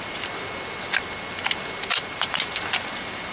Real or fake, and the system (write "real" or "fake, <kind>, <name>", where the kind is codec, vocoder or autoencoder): real